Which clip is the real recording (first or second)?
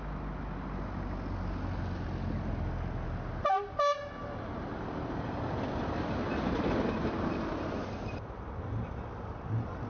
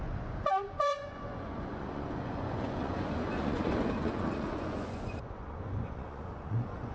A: first